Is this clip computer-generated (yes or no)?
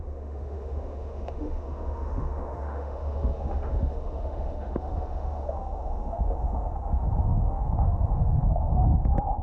yes